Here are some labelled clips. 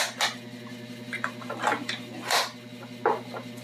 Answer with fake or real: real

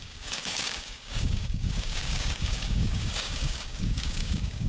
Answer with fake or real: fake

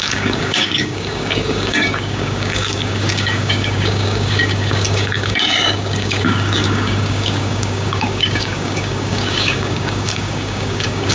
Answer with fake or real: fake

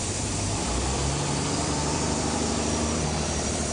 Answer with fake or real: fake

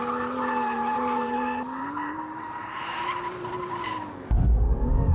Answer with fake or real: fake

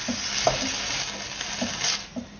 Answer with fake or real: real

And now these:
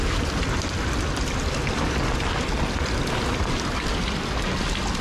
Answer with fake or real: real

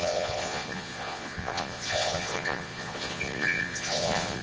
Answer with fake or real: fake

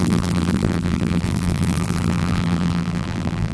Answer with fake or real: fake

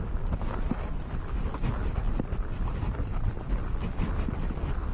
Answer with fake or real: real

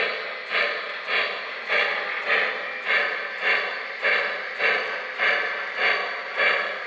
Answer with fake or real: real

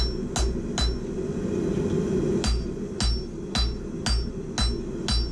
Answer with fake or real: real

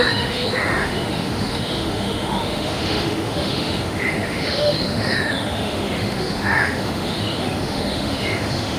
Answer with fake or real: fake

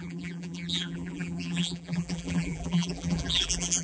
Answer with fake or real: fake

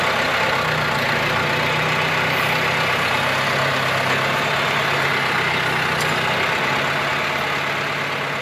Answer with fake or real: real